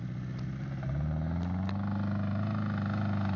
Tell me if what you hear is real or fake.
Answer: real